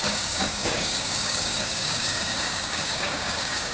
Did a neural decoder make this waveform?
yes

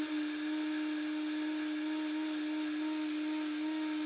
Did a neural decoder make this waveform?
no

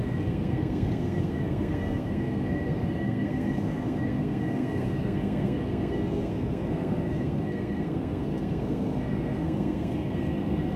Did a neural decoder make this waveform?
yes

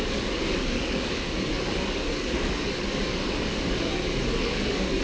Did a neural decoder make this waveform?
yes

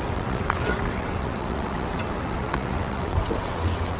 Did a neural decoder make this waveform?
yes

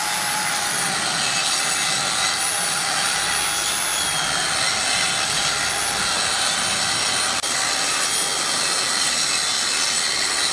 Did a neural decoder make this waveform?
no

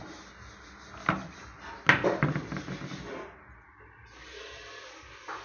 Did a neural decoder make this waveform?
no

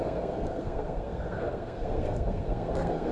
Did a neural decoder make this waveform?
yes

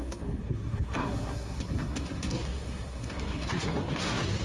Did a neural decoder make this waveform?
yes